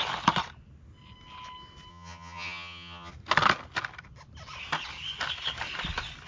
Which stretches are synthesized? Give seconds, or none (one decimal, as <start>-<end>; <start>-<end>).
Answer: 1.9-3.1